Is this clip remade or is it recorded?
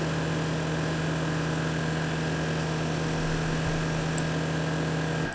recorded